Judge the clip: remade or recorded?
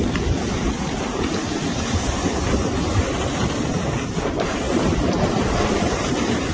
remade